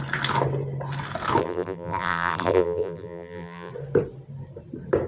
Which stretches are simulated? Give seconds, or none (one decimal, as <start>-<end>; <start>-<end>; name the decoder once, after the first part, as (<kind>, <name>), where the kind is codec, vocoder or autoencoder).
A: 1.4-3.7 (vocoder, BigVGAN v2)